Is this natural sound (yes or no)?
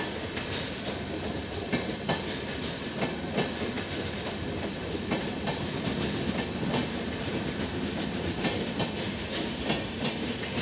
yes